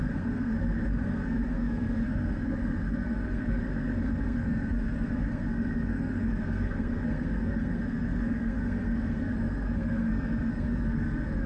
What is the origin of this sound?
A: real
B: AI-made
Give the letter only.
B